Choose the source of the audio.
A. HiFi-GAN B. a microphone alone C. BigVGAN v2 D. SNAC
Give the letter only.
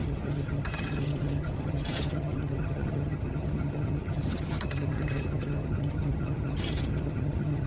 A